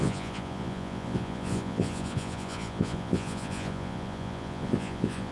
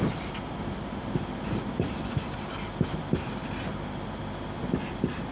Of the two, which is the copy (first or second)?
first